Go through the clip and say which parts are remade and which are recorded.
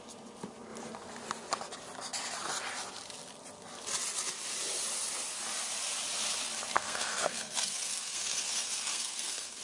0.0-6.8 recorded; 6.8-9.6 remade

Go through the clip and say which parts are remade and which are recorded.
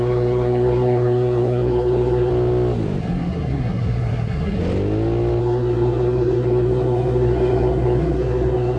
0.0-2.3 remade; 2.3-3.0 recorded; 3.0-4.6 remade; 4.6-5.4 recorded; 5.4-8.8 remade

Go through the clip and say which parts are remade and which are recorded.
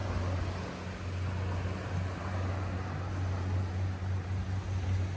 0.0-5.2 recorded